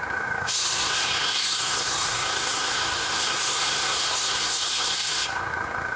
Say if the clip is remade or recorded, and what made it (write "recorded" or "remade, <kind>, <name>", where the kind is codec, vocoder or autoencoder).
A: remade, codec, SNAC